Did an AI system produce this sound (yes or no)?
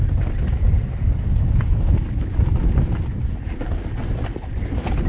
no